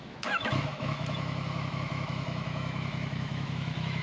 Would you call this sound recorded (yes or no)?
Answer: no